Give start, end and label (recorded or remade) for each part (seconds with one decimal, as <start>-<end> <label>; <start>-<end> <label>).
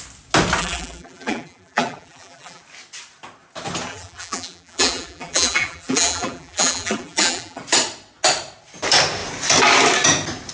0.0-0.6 recorded; 0.6-2.6 remade; 2.6-3.9 recorded; 3.9-7.6 remade; 7.6-10.5 recorded